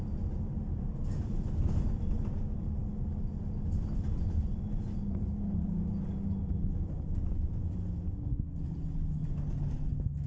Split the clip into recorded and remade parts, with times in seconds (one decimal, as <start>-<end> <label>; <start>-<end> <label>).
0.0-10.3 recorded